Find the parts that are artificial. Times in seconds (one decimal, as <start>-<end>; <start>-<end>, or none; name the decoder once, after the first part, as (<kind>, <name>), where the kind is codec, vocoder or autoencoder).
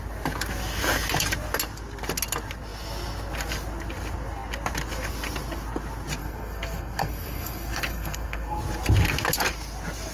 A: 6.2-8.6 (codec, SNAC)